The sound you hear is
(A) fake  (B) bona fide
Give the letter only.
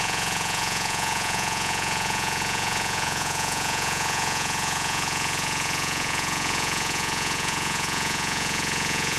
A